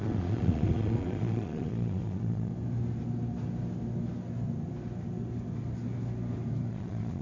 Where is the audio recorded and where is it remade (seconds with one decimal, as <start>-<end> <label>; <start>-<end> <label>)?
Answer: 0.0-2.5 remade; 2.5-6.7 recorded; 6.7-7.2 remade